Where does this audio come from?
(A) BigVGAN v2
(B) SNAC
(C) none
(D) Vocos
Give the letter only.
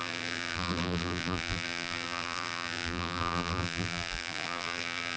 A